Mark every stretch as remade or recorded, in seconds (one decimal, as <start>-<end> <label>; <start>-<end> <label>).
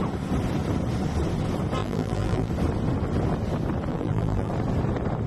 0.0-1.8 recorded; 1.8-2.5 remade; 2.5-3.9 recorded; 3.9-4.5 remade; 4.5-5.3 recorded